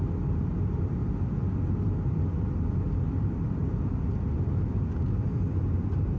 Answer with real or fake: real